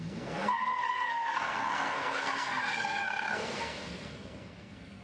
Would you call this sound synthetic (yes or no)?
yes